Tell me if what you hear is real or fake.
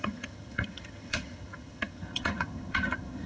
fake